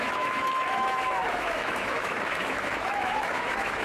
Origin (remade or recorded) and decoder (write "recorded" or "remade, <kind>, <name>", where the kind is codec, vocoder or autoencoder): remade, autoencoder, DAC-VAE